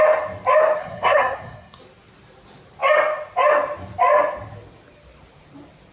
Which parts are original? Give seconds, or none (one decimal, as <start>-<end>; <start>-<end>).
0.0-0.8; 1.8-5.9